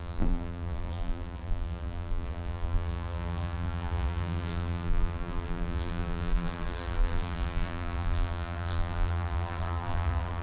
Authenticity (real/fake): fake